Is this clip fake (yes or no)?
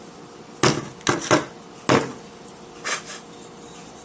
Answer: no